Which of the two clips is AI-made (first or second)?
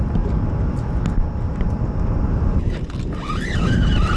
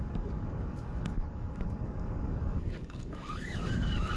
second